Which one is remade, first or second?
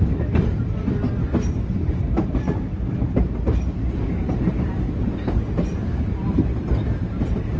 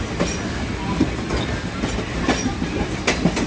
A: first